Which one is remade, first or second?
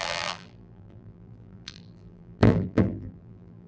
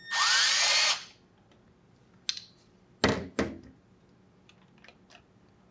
first